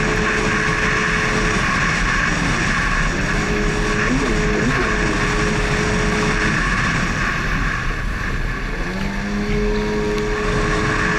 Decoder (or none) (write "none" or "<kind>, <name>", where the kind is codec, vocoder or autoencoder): none